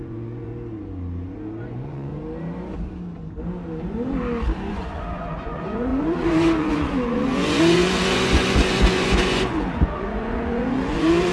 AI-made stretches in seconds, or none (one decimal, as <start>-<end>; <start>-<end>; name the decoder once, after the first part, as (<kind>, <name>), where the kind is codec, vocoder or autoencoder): 0.0-0.5 (vocoder, Vocos); 1.6-2.1; 4.7-11.3